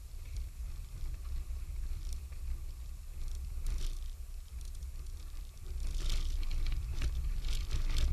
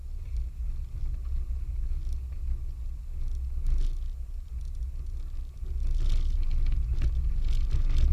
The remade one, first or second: first